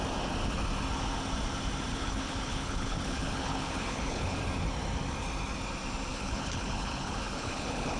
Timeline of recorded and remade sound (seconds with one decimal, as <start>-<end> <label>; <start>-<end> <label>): 0.0-1.9 recorded; 1.9-4.4 remade; 4.4-6.1 recorded; 6.1-8.0 remade